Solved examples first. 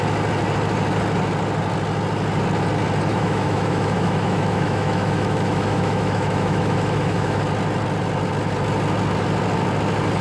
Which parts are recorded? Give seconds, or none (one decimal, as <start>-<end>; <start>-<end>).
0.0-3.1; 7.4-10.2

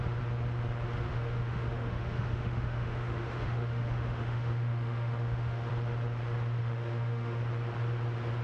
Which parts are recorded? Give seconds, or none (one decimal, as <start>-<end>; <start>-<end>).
0.0-1.1; 5.7-6.6; 7.4-8.4

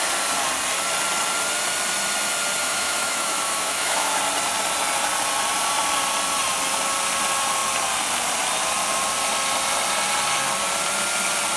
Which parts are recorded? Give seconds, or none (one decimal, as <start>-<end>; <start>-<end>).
0.0-2.6; 4.2-11.6

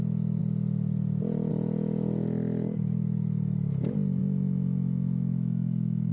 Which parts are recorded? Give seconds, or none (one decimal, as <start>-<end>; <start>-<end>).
0.0-4.2

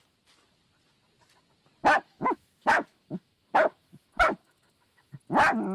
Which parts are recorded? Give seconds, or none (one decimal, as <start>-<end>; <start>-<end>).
0.0-1.8; 5.1-5.7

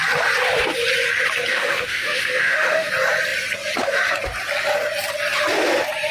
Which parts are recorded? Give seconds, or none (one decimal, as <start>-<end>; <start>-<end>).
0.0-1.5; 2.9-6.1

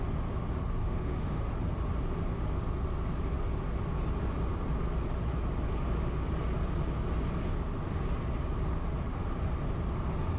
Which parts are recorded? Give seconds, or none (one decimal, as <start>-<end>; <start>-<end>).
0.0-0.8; 1.5-10.4